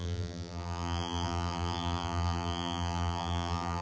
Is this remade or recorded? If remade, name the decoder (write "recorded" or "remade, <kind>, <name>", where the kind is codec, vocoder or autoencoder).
remade, vocoder, BigVGAN v2